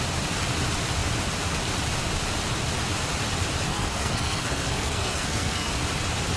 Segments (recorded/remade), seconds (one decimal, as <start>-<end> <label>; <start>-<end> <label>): 0.0-3.7 recorded; 3.7-5.7 remade; 5.7-6.4 recorded